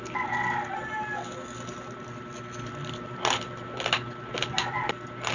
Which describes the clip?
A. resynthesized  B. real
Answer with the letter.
B